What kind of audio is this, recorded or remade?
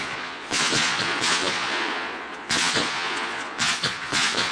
remade